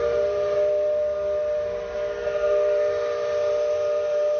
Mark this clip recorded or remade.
recorded